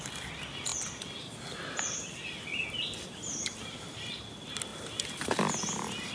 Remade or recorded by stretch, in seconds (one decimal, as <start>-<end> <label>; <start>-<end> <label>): 0.0-6.1 recorded